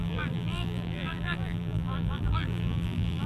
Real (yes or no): no